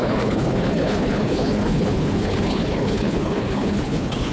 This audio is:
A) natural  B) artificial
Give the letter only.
B